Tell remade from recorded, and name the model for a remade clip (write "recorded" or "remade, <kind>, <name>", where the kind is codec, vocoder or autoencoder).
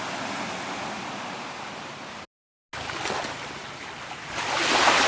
recorded